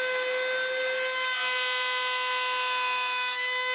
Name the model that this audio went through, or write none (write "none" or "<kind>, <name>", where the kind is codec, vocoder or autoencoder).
none